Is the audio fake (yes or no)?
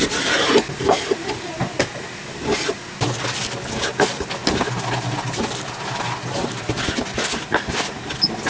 no